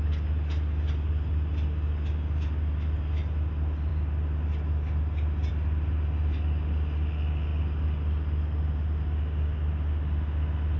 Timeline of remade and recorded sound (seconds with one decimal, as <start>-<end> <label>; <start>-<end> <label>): 0.0-10.8 recorded